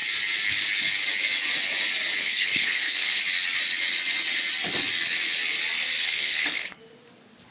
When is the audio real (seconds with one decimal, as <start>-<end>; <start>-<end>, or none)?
0.0-2.2; 3.2-6.0; 6.8-7.5